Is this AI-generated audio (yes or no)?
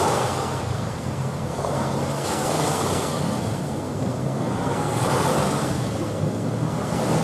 yes